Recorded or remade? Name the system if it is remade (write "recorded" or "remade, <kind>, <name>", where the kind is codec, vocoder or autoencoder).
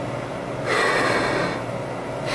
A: recorded